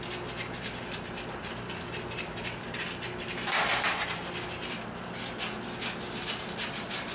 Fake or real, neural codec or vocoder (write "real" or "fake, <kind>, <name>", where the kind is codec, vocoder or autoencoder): real